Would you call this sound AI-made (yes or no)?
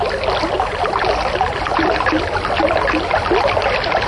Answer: no